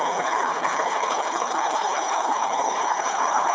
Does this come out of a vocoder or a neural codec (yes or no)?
yes